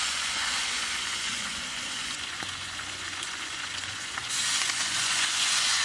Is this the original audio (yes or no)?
no